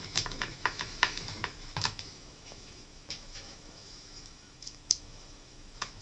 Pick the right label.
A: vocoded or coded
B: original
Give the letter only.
A